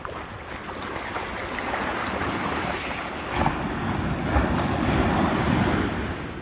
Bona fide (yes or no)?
yes